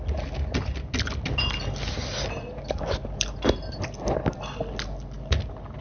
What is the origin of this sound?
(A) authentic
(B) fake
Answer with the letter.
A